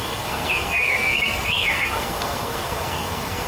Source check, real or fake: fake